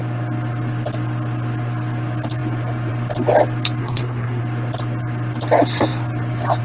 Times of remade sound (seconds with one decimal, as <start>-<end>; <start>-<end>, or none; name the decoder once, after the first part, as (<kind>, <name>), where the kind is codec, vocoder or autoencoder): 3.8-4.4 (codec, SNAC)